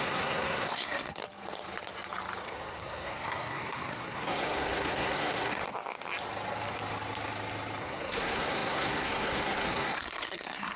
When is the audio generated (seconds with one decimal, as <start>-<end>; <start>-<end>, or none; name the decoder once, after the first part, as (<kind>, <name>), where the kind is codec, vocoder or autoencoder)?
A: 0.0-1.2 (codec, SNAC); 2.4-5.6; 7.8-10.8